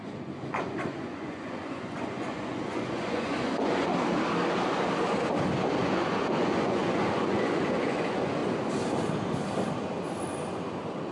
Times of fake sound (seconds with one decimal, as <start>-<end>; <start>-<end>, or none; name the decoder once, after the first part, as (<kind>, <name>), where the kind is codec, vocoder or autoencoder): 0.0-3.9 (vocoder, Vocos); 5.8-8.4